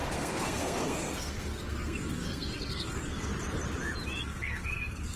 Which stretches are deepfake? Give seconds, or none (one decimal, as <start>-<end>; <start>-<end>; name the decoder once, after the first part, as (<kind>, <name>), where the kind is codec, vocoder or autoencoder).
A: 0.0-3.3 (codec, SNAC); 4.2-5.2